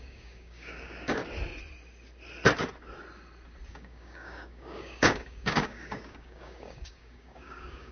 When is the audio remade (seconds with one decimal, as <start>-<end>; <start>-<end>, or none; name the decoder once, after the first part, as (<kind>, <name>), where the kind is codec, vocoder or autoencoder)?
0.0-1.2 (codec, DAC); 3.7-7.9

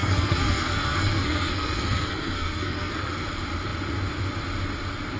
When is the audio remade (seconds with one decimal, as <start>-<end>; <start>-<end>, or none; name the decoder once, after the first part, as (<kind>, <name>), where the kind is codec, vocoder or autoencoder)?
0.0-3.1 (codec, SNAC)

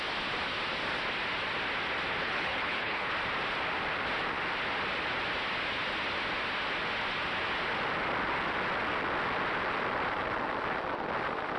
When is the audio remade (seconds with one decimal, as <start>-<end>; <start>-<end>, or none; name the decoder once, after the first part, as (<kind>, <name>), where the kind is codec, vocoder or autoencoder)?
2.2-3.1 (codec, HILCodec)

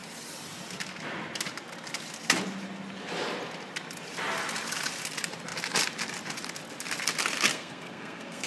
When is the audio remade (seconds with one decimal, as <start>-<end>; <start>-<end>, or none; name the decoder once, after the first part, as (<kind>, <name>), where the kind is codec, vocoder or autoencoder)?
7.5-8.5 (codec, SNAC)